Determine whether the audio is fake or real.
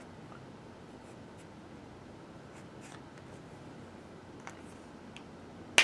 real